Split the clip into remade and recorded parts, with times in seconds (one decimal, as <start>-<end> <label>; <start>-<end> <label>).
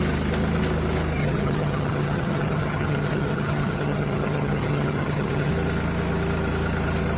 0.0-1.2 recorded; 1.2-5.5 remade; 5.5-7.2 recorded